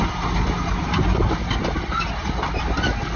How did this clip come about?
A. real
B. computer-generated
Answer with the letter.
B